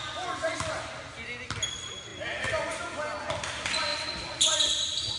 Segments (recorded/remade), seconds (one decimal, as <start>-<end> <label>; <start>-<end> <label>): 0.0-5.2 recorded